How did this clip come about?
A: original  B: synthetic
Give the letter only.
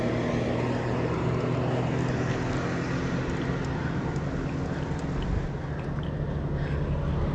A